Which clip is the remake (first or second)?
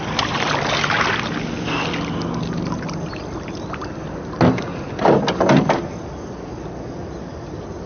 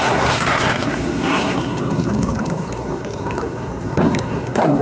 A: second